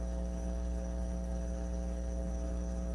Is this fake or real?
fake